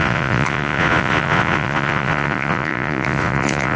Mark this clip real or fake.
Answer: fake